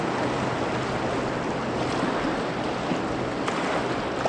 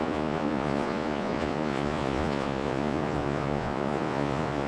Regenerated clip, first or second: second